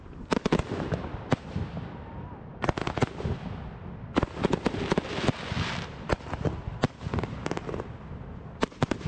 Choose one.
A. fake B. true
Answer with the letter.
B